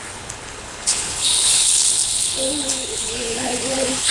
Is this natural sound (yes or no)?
no